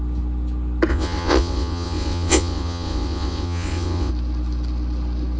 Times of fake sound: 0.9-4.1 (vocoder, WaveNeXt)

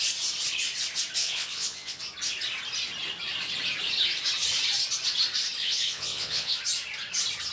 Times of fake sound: 1.2-2.0 (vocoder, WaveNeXt); 5.6-6.6

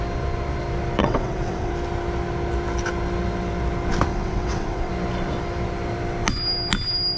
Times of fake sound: 1.0-1.7 (vocoder, WaveNeXt); 4.1-4.9

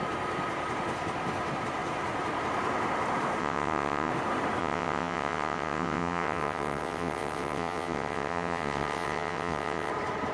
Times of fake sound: 3.4-4.1 (vocoder, WaveNeXt); 4.6-9.9

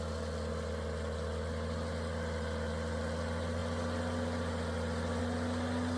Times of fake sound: none

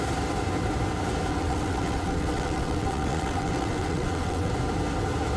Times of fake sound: 1.3-4.5 (vocoder, WaveNeXt)